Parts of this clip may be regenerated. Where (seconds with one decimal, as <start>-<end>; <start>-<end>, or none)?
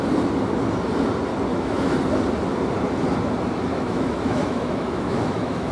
1.5-2.0; 3.7-5.7